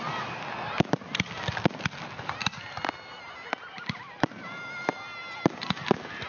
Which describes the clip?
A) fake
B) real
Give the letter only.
B